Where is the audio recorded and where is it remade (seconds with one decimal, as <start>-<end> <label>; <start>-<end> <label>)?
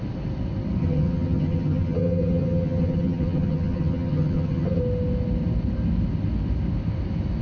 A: 0.0-0.8 recorded; 0.8-4.8 remade; 4.8-7.4 recorded